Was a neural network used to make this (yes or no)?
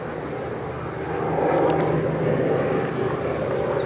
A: no